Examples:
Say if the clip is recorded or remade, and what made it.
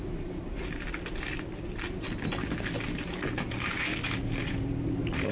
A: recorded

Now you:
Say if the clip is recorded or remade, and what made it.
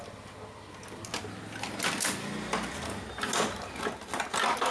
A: recorded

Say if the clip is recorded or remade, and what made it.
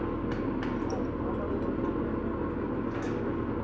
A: recorded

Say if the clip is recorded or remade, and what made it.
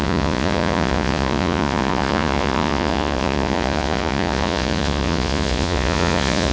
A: remade, vocoder, Vocos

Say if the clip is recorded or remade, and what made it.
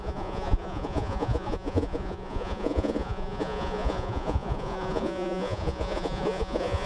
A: remade, vocoder, Vocos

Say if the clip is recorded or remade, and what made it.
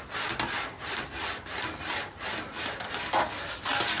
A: recorded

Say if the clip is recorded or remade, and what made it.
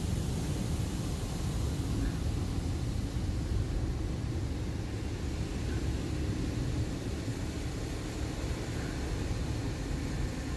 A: recorded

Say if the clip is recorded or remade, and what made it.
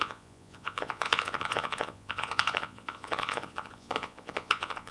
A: remade, vocoder, Vocos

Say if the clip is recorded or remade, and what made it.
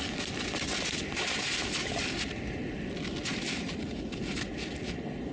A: recorded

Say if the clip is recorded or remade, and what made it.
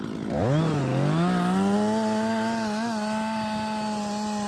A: recorded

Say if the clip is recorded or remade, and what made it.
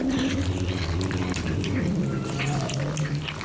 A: recorded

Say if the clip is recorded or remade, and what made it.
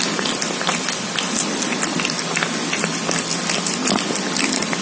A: recorded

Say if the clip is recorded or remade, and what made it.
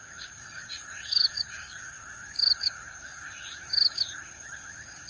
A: remade, codec, DAC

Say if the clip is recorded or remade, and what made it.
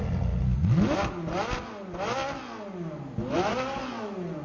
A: recorded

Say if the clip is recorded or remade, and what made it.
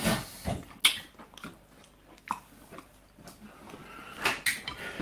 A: recorded